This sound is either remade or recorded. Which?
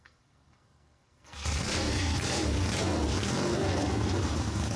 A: remade